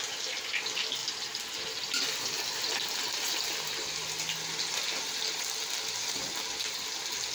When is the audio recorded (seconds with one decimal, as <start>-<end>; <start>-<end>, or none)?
0.0-7.3